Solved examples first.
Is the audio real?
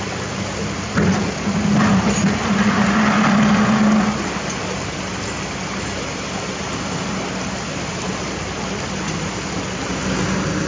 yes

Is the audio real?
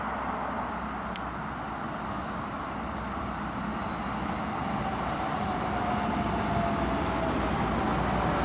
yes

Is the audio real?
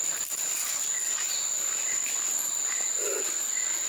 yes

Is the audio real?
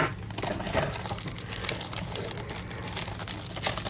yes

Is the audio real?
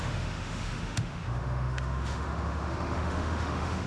no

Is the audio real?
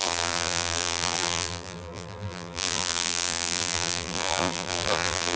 no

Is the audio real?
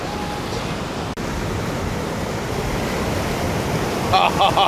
yes